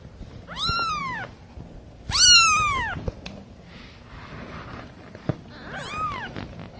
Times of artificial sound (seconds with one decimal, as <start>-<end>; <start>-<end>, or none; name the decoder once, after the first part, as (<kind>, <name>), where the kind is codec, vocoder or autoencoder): none